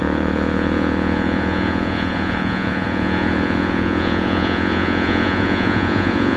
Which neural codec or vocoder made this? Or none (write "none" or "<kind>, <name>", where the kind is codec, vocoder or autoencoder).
vocoder, Vocos